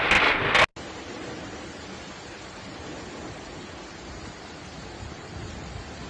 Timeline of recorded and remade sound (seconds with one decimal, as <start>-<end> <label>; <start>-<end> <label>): 0.0-6.1 recorded